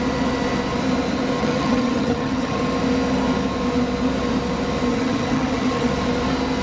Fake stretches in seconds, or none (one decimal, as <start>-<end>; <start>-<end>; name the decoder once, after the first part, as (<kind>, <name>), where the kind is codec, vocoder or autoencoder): 1.4-2.6 (vocoder, HiFi-GAN); 4.9-5.9